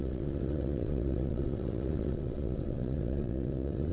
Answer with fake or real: fake